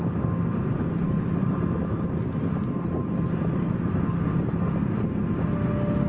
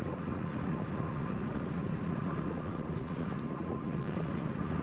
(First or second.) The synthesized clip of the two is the second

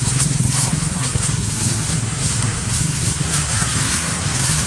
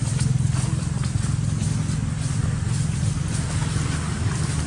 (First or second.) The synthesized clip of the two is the first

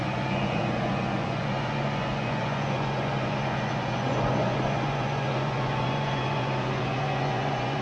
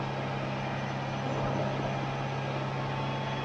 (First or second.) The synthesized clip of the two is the first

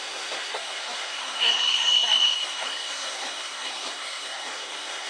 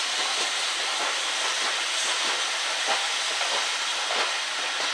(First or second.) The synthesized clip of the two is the first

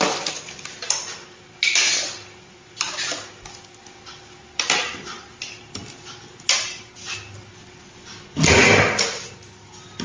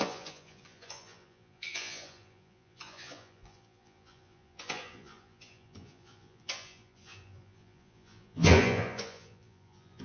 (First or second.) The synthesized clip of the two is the second